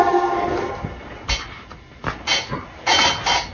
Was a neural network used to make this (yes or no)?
no